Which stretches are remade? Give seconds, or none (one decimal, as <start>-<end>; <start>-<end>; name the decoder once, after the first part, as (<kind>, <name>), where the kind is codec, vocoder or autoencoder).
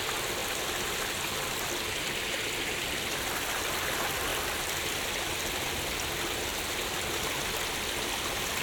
none